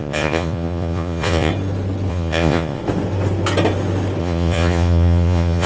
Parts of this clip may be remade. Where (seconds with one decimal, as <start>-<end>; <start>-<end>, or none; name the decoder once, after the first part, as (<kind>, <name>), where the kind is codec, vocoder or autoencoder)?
0.0-1.5 (vocoder, Vocos); 2.1-2.8; 4.2-5.7